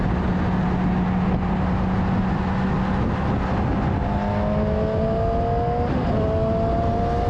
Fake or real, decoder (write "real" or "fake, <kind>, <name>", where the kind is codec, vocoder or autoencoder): real